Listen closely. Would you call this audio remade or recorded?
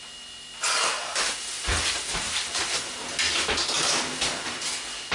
recorded